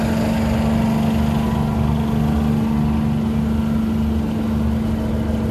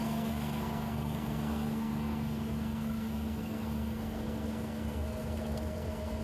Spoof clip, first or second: second